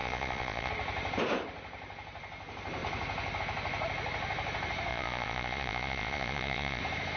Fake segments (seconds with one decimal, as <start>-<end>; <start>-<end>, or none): 0.0-0.7; 4.9-6.8